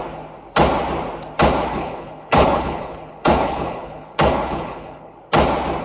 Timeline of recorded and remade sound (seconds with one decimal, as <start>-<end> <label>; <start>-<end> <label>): 0.0-1.7 recorded; 1.7-5.2 remade; 5.2-5.8 recorded

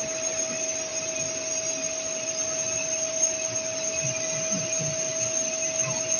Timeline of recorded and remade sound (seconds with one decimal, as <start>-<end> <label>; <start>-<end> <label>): 0.0-0.9 recorded; 0.9-4.6 remade; 4.6-6.2 recorded

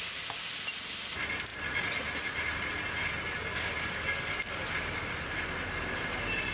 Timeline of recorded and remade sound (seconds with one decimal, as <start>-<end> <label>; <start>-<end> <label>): 0.0-6.5 recorded

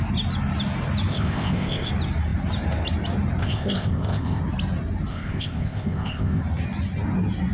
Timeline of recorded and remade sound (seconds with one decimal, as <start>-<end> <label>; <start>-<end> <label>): 0.0-1.1 recorded; 1.1-1.9 remade; 1.9-3.4 recorded; 3.4-4.4 remade; 4.4-5.1 recorded; 5.1-6.4 remade; 6.4-7.5 recorded

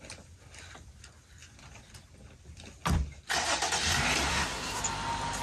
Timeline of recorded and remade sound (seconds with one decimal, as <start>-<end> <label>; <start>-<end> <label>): 0.0-4.3 recorded; 4.3-4.8 remade; 4.8-5.4 recorded